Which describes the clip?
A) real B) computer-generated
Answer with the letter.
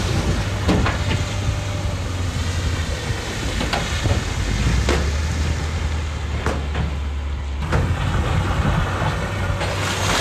A